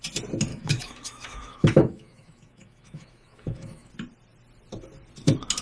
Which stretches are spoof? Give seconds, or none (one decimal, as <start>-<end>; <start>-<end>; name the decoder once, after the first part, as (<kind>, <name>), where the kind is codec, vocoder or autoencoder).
0.5-3.9 (autoencoder, DAC-VAE)

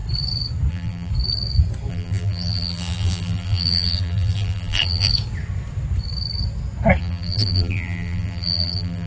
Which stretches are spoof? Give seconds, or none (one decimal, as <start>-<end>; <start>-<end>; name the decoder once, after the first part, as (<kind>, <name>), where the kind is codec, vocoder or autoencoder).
0.7-1.1 (vocoder, BigVGAN v2); 1.9-5.1; 7.0-9.1